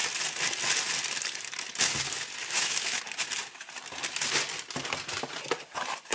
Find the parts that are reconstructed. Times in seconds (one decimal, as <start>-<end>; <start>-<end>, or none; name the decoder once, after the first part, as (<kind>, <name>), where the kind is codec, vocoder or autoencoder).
2.4-3.0 (autoencoder, DAC-VAE)